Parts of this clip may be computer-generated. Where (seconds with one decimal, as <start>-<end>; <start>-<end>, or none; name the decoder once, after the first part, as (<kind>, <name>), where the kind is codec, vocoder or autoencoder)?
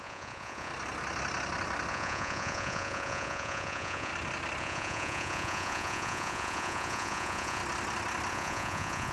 0.0-0.7 (vocoder, Vocos); 1.9-4.1; 4.6-7.6; 8.3-9.1